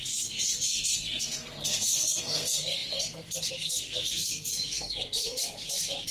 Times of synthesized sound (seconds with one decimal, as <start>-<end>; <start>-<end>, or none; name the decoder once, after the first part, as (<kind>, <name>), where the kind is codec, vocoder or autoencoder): 0.0-6.1 (codec, SNAC)